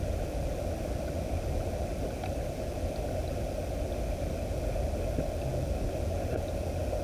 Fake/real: real